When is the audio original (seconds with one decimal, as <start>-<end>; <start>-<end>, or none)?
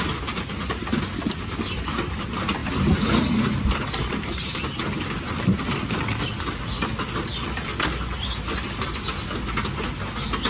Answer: 0.0-10.5